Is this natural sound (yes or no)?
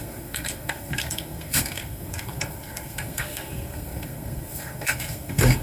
no